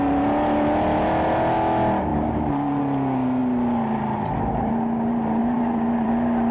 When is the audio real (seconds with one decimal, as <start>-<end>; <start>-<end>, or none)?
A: 0.0-5.4; 6.1-6.5